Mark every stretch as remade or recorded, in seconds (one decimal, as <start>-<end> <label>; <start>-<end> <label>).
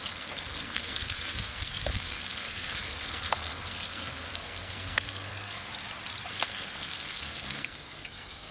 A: 0.0-5.7 remade; 5.7-6.3 recorded; 6.3-8.5 remade